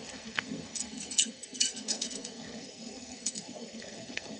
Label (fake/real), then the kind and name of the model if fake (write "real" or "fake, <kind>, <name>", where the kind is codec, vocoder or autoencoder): fake, codec, SNAC